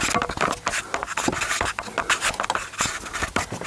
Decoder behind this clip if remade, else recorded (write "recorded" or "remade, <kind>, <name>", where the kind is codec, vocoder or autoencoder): recorded